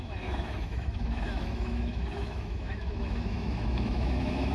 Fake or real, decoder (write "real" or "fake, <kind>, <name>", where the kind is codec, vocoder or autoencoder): fake, autoencoder, DAC-VAE